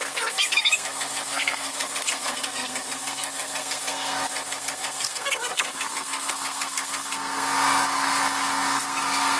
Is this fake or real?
fake